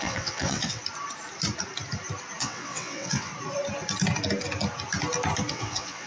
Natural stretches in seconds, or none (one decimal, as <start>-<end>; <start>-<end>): 0.8-2.4; 3.3-5.5